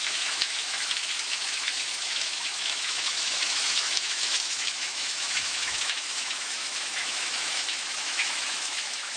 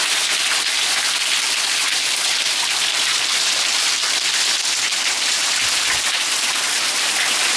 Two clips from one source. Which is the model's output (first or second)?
first